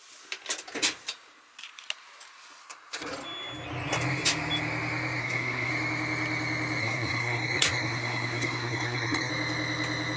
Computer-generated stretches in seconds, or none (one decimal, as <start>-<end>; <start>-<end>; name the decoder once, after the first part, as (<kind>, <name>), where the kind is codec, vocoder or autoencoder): 2.6-3.1 (codec, SNAC); 5.2-5.7; 6.8-9.3